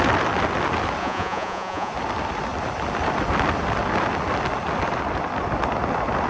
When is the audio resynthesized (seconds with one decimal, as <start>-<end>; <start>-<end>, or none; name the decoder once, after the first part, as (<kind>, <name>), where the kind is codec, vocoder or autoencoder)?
1.0-1.9 (vocoder, Vocos)